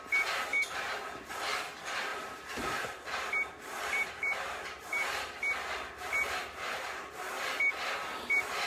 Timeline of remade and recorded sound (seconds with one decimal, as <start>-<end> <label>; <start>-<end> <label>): 0.0-0.5 recorded; 0.5-1.3 remade; 1.3-2.1 recorded; 2.1-7.1 remade; 7.1-8.7 recorded